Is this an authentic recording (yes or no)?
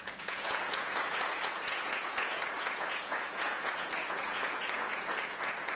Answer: no